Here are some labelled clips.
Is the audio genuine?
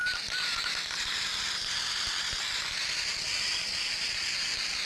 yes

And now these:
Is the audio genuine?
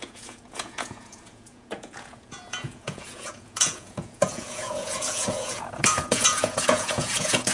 no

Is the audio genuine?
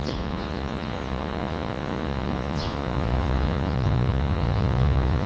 no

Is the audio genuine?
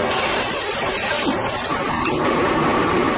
yes